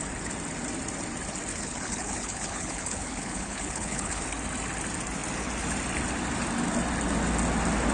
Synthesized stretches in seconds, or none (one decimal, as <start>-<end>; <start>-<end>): 1.5-4.2